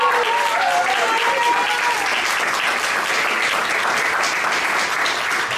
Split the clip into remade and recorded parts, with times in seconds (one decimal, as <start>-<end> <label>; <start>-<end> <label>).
0.0-5.6 recorded